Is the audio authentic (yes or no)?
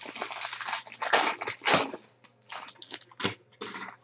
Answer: yes